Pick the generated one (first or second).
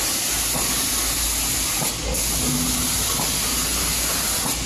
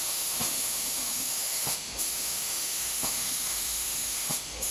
second